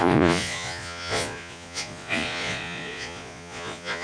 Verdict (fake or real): fake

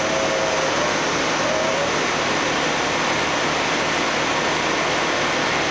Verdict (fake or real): real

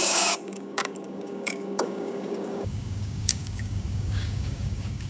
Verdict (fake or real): fake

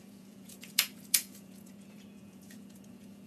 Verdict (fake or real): fake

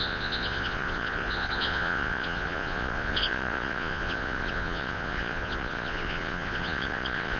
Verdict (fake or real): fake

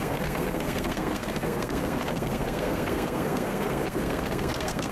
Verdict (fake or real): fake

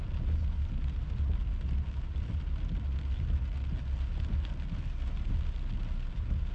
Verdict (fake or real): real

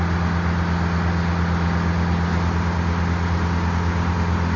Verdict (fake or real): real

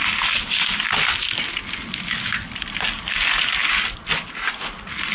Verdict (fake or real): real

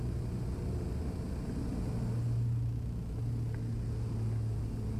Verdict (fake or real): real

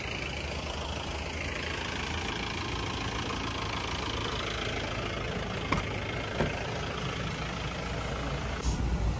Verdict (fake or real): real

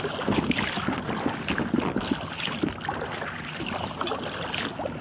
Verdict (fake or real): real